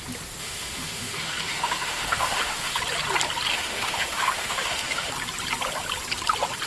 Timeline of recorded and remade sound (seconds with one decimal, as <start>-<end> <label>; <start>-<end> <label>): 0.0-0.4 recorded; 0.4-2.8 remade; 2.8-3.5 recorded; 3.5-5.1 remade; 5.1-6.7 recorded